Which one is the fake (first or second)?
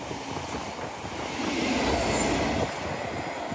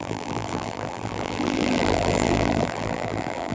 second